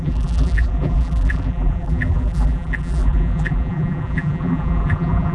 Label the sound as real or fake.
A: fake